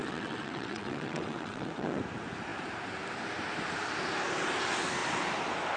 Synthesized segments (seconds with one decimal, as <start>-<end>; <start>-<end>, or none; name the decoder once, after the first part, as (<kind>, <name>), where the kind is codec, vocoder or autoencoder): 0.0-2.0 (vocoder, WaveNeXt)